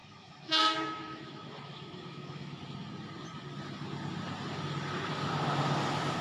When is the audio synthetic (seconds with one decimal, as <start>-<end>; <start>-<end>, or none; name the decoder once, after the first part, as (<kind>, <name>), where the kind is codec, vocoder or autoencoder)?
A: 0.0-2.6 (autoencoder, DAC-VAE)